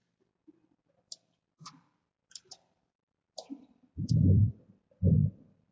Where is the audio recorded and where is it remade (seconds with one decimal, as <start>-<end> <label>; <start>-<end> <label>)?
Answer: 0.0-1.5 remade; 1.5-2.2 recorded; 2.2-5.7 remade